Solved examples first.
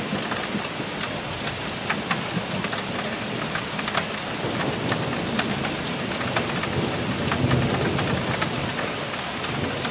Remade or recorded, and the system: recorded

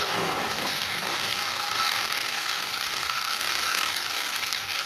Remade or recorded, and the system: remade, codec, DAC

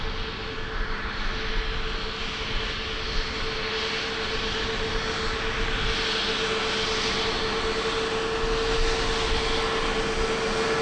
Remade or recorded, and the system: recorded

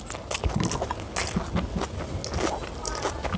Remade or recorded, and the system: recorded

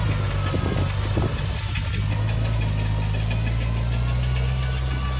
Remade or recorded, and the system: recorded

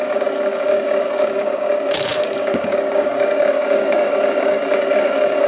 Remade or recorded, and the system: remade, codec, DAC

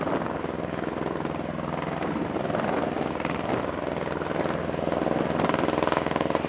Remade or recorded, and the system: recorded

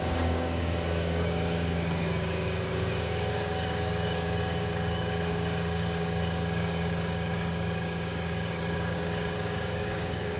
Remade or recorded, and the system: remade, codec, DAC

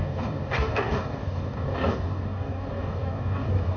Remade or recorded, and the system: remade, codec, DAC